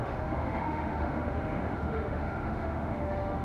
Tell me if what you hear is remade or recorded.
remade